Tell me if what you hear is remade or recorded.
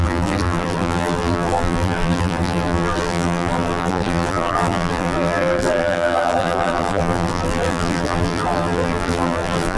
remade